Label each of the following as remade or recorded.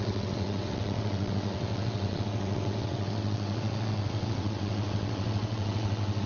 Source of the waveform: remade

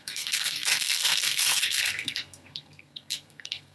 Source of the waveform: remade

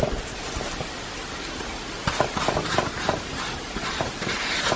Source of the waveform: recorded